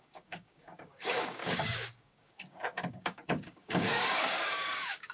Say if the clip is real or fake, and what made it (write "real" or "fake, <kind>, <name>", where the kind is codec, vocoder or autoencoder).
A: fake, codec, DAC